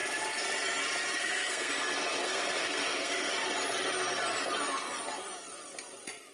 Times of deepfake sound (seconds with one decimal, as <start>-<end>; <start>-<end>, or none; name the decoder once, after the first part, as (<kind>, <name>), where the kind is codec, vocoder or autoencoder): 1.2-1.7 (codec, SNAC); 2.2-3.3